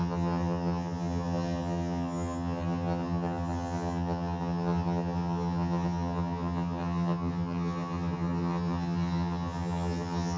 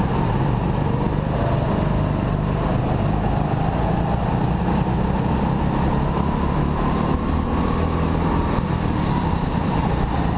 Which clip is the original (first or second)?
second